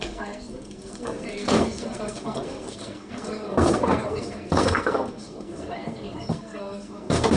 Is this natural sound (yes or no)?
no